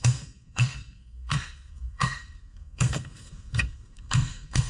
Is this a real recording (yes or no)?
no